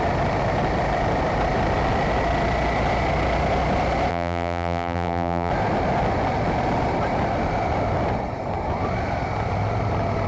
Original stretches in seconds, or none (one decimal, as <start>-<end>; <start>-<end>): 0.0-4.1; 5.5-10.3